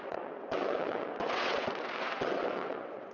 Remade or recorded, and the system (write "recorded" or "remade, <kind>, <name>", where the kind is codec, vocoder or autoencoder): remade, vocoder, WaveNeXt